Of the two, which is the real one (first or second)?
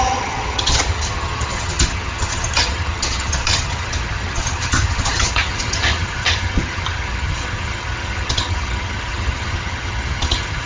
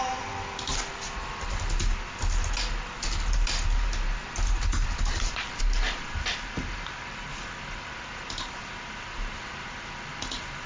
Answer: second